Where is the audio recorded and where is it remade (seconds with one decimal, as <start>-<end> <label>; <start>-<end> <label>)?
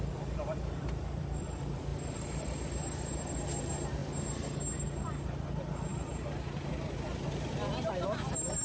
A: 0.0-8.6 recorded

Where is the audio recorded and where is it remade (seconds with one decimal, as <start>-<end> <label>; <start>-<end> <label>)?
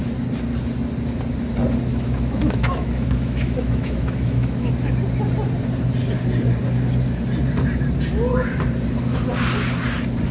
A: 0.0-1.9 recorded; 1.9-4.7 remade; 4.7-10.3 recorded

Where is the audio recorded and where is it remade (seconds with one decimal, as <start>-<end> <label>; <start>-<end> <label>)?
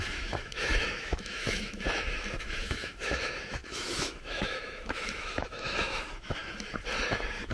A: 0.0-6.4 remade; 6.4-7.1 recorded; 7.1-7.5 remade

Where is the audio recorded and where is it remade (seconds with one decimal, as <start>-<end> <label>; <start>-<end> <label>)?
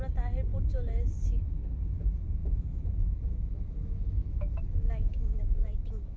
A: 0.0-0.5 recorded; 0.5-1.6 remade; 1.6-2.4 recorded; 2.4-6.2 remade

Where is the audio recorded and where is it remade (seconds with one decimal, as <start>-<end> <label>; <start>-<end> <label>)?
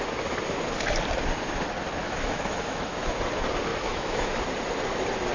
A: 0.0-2.0 recorded; 2.0-2.9 remade; 2.9-3.7 recorded; 3.7-4.4 remade; 4.4-5.3 recorded